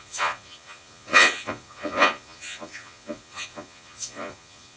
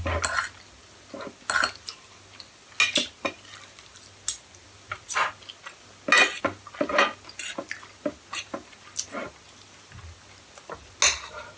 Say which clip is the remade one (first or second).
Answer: first